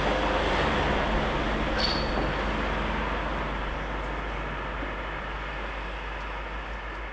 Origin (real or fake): real